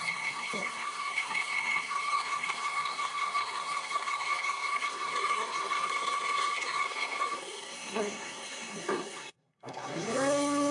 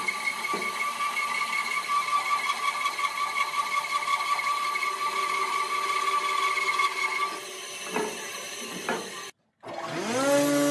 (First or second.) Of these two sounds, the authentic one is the second